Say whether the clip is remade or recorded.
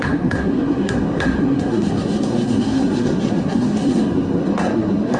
remade